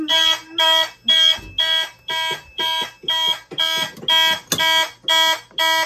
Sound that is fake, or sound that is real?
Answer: real